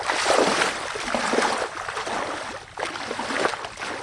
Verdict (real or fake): real